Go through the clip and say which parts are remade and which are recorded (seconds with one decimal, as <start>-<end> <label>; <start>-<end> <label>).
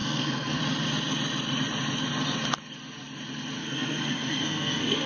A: 0.0-0.6 remade; 0.6-3.6 recorded; 3.6-5.1 remade